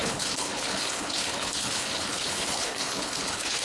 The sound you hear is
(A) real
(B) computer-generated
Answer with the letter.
B